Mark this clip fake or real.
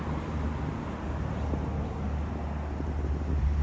real